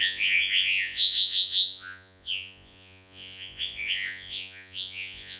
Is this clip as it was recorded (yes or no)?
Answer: no